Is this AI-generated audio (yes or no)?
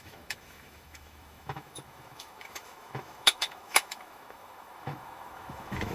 yes